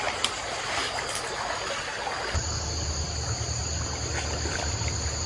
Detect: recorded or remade recorded